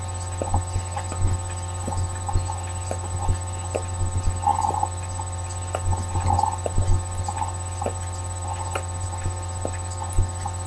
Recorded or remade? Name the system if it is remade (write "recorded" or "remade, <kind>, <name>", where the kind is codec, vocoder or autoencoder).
recorded